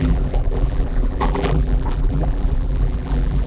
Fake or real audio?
fake